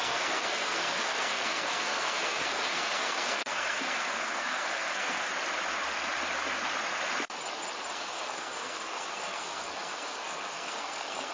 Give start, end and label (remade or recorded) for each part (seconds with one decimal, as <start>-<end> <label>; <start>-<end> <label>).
0.0-5.3 remade; 5.3-7.9 recorded; 7.9-11.3 remade